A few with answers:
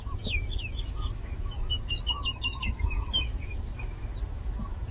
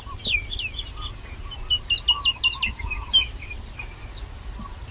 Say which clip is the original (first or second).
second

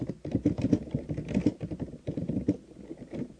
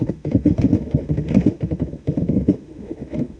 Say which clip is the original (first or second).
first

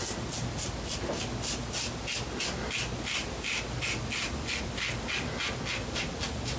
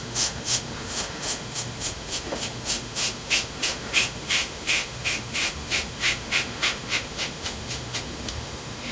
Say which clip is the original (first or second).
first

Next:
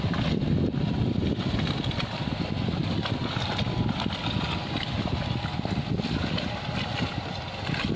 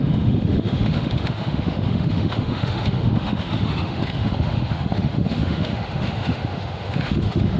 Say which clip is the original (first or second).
first